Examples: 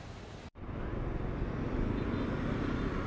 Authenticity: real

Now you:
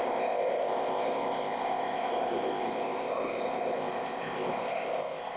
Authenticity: fake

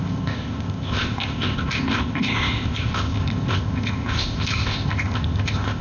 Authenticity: fake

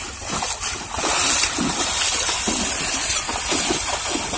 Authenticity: real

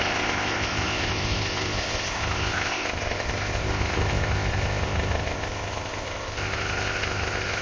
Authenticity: fake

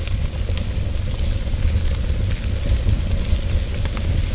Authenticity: real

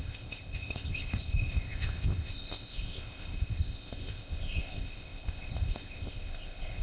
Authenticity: fake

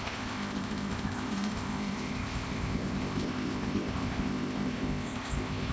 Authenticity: fake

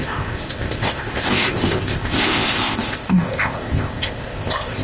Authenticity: fake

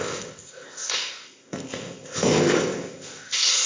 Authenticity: fake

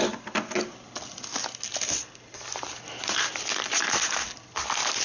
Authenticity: real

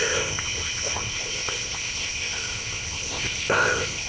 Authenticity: fake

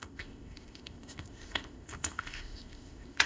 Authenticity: fake